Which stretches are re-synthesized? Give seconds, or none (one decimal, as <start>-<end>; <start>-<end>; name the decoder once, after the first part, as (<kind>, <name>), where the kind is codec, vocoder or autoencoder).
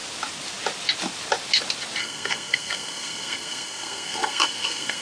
2.0-5.0 (codec, SNAC)